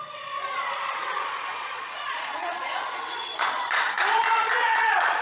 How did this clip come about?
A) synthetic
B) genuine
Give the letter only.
A